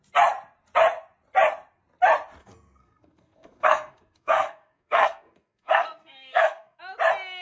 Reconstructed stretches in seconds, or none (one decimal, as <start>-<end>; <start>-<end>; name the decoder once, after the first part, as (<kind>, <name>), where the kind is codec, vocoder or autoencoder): 2.4-6.8 (codec, SNAC)

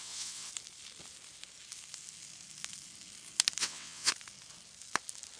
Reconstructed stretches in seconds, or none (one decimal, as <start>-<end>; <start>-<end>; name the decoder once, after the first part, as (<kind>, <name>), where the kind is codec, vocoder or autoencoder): 0.0-0.5 (vocoder, WaveNeXt); 3.6-4.1

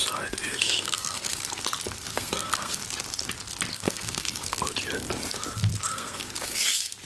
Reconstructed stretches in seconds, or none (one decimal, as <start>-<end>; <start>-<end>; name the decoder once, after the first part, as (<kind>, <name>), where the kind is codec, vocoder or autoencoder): 0.5-1.6 (codec, SNAC); 2.1-2.8; 3.7-4.6; 5.9-7.0

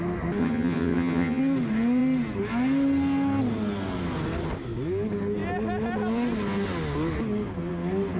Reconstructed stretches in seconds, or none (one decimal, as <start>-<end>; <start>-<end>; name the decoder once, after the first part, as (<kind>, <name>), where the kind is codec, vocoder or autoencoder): 0.4-1.4 (vocoder, HiFi-GAN)

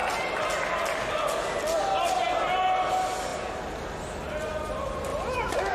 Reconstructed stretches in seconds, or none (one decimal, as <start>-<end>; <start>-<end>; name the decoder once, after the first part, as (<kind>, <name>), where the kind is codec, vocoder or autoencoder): none